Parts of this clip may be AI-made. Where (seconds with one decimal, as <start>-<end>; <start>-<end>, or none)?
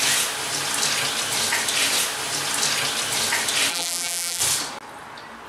3.7-4.4